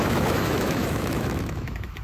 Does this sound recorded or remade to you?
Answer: remade